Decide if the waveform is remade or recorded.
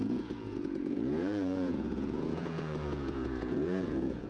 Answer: remade